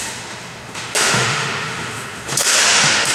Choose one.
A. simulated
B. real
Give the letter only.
A